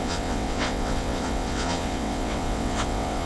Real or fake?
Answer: fake